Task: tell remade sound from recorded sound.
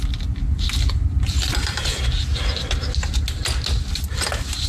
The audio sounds recorded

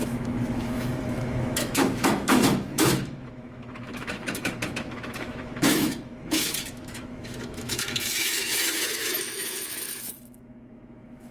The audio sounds remade